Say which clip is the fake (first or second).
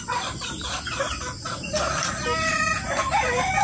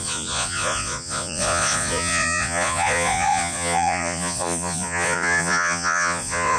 second